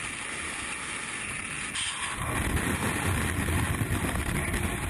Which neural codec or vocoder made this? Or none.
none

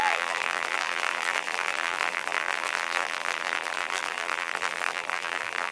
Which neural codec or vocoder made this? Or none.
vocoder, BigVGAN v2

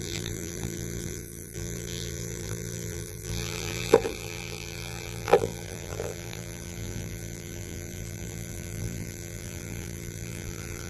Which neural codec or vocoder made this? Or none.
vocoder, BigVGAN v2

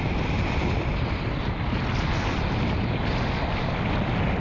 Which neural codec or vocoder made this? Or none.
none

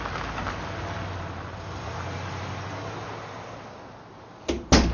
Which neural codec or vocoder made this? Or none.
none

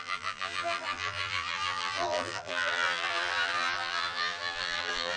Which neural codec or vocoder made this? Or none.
vocoder, BigVGAN v2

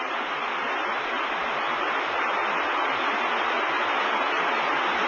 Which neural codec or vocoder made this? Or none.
none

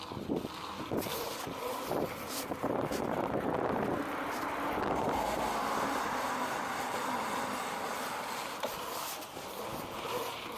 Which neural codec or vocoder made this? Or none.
vocoder, BigVGAN v2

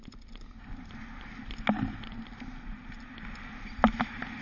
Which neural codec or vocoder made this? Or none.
none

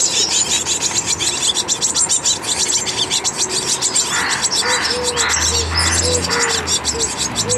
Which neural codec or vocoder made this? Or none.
none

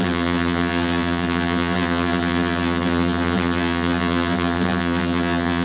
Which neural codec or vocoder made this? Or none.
vocoder, BigVGAN v2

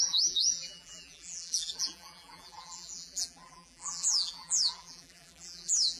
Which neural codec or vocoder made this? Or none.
vocoder, BigVGAN v2